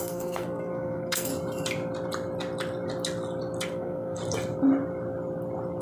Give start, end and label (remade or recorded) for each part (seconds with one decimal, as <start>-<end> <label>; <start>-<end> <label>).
0.0-1.3 remade; 1.3-3.7 recorded; 3.7-4.2 remade; 4.2-5.8 recorded